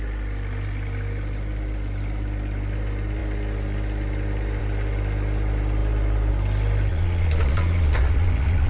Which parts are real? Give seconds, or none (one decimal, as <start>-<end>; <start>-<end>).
0.0-6.9